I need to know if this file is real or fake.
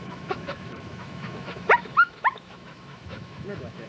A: fake